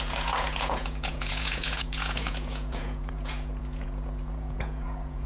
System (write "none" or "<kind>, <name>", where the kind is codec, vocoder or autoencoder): vocoder, Vocos